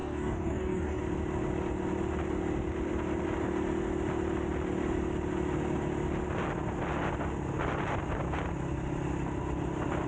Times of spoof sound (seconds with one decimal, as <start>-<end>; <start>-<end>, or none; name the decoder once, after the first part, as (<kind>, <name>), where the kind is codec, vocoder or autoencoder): 0.0-1.0 (codec, DAC)